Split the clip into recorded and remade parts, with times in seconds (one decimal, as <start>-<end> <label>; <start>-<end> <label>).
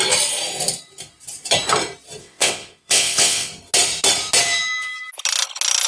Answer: 0.0-2.2 recorded; 2.2-3.5 remade; 3.5-5.9 recorded